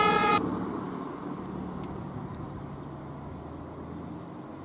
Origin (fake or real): real